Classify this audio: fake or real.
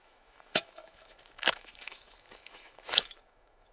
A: fake